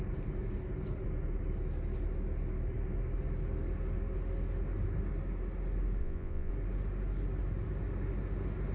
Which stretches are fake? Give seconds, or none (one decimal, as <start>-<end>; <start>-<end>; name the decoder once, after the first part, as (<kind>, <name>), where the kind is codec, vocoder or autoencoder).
6.0-6.5 (vocoder, Vocos)